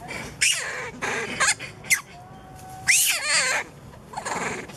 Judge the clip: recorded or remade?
recorded